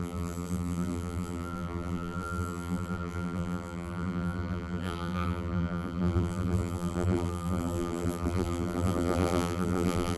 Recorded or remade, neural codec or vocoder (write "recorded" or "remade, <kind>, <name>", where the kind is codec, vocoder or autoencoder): remade, vocoder, BigVGAN v2